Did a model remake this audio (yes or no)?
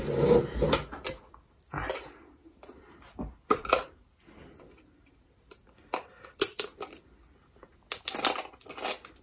no